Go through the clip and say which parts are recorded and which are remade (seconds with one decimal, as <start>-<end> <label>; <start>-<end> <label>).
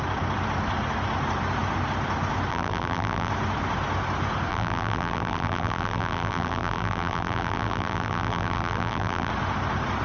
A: 0.0-2.5 recorded; 2.5-3.3 remade; 3.3-4.5 recorded; 4.5-9.3 remade; 9.3-10.0 recorded